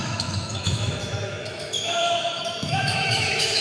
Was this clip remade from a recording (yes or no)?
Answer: yes